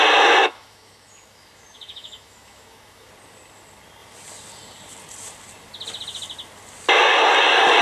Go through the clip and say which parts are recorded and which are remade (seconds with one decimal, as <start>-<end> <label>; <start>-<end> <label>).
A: 0.0-0.4 recorded; 0.4-3.1 remade; 3.1-7.8 recorded